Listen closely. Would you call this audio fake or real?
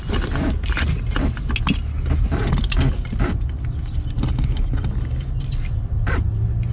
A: real